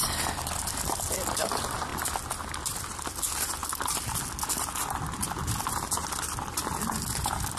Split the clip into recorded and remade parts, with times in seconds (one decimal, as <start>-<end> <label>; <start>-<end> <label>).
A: 0.0-1.9 remade; 1.9-2.8 recorded; 2.8-3.6 remade; 3.6-6.9 recorded; 6.9-7.6 remade